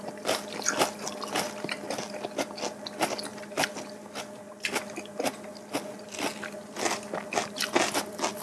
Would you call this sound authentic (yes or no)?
yes